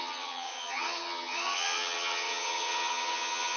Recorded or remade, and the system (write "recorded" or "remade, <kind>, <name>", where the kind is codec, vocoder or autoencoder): remade, vocoder, HiFi-GAN